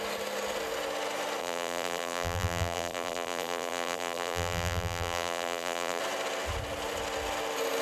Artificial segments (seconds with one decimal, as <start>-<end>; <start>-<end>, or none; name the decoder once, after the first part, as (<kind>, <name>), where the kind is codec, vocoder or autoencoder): 1.4-6.0 (vocoder, BigVGAN v2)